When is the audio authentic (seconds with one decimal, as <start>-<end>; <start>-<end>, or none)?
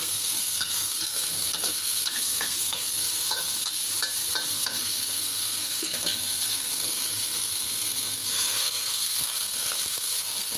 3.8-4.5